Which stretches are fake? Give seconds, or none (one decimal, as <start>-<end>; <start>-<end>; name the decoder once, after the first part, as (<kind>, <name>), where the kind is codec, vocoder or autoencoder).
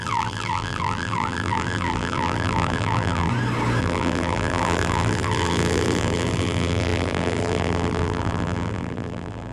0.0-3.3 (vocoder, BigVGAN v2); 3.8-9.5